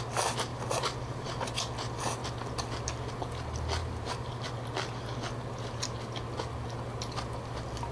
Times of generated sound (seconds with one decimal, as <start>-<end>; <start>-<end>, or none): 0.5-1.4; 3.8-4.5